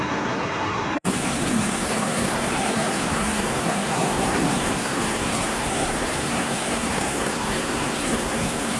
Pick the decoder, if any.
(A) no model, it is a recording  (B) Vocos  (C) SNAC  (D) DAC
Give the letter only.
C